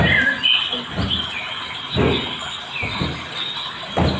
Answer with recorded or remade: recorded